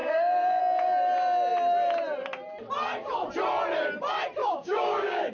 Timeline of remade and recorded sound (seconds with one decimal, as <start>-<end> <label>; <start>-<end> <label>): 0.0-0.6 remade; 0.6-4.4 recorded; 4.4-5.3 remade